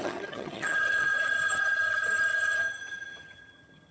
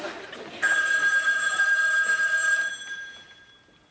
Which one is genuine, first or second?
second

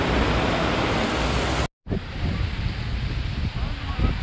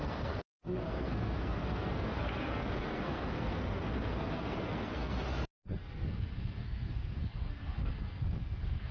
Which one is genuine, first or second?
first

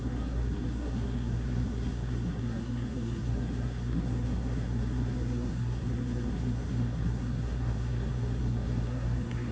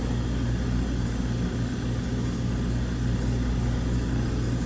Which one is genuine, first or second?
second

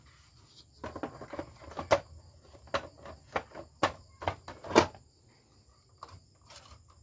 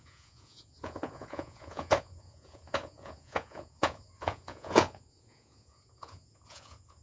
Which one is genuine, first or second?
first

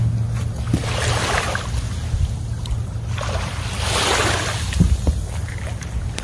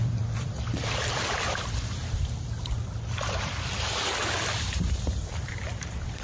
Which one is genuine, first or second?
first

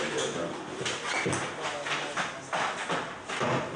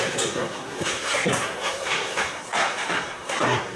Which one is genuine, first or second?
first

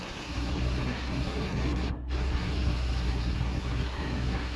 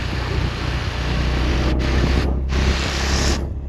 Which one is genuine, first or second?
second